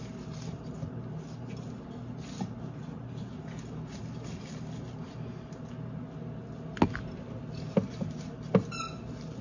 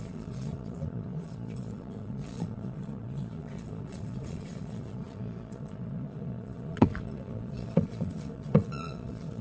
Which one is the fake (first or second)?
second